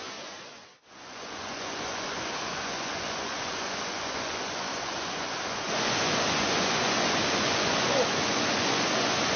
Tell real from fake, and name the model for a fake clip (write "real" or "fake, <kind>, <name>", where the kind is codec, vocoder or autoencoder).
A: fake, vocoder, Vocos